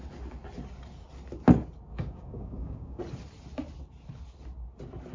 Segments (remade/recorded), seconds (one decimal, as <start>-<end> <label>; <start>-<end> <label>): 0.0-1.9 recorded; 1.9-3.0 remade; 3.0-5.1 recorded

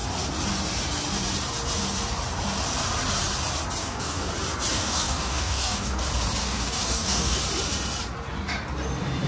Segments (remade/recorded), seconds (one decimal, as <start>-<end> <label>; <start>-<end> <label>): 0.0-3.8 recorded; 3.8-4.3 remade; 4.3-4.7 recorded; 4.7-6.0 remade; 6.0-6.4 recorded; 6.4-7.4 remade; 7.4-9.3 recorded